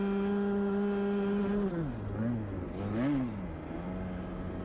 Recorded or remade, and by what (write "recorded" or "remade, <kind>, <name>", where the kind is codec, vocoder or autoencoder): recorded